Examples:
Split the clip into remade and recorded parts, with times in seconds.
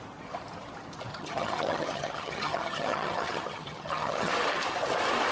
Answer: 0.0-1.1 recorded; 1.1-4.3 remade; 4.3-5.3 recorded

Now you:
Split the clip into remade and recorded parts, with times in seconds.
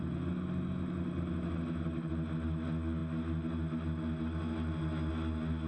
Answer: 0.0-5.7 recorded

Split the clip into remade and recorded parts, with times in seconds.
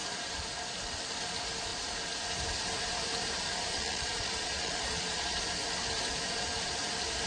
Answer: 0.0-3.7 recorded; 3.7-5.4 remade; 5.4-7.3 recorded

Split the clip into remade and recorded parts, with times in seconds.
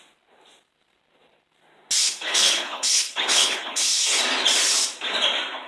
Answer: 0.0-2.0 recorded; 2.0-4.2 remade; 4.2-5.7 recorded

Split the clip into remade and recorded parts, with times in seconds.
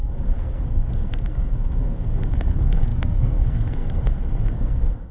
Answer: 0.0-5.1 remade